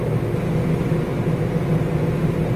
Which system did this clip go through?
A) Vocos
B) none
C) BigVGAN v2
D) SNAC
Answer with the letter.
B